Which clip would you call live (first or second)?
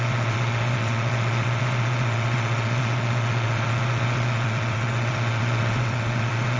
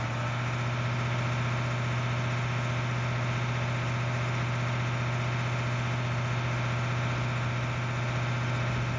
second